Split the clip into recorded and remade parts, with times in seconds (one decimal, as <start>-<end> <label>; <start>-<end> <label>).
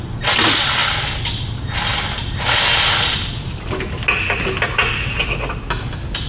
0.0-6.3 recorded